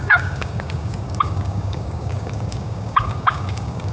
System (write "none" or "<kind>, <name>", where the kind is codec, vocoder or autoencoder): codec, DAC